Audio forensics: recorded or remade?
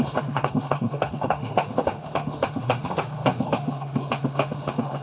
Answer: remade